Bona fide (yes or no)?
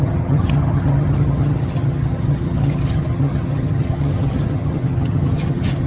no